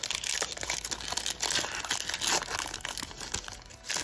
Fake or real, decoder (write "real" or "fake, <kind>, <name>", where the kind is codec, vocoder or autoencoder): real